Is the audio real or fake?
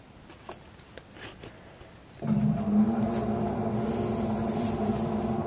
real